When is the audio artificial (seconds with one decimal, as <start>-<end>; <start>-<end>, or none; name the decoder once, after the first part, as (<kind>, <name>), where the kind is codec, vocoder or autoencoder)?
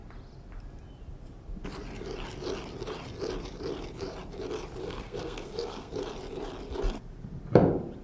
4.8-5.9 (codec, SNAC)